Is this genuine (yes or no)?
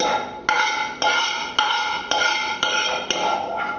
yes